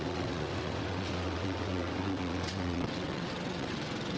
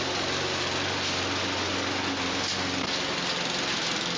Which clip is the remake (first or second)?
first